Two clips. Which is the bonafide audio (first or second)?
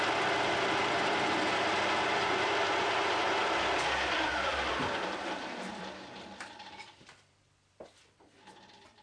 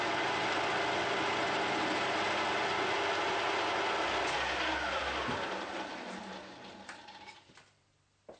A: second